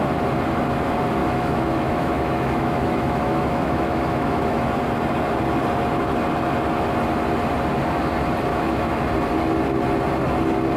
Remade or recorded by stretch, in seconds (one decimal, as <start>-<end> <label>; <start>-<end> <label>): 0.0-1.2 recorded; 1.2-4.7 remade; 4.7-8.5 recorded; 8.5-9.0 remade; 9.0-10.8 recorded